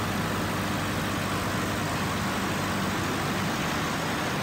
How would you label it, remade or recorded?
recorded